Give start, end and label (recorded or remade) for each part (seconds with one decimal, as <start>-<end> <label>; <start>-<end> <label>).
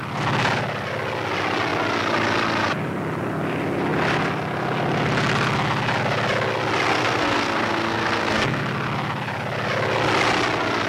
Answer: 0.0-6.9 recorded; 6.9-8.6 remade; 8.6-10.9 recorded